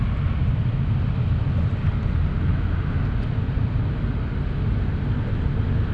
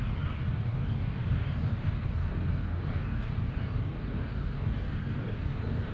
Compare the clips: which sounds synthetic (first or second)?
second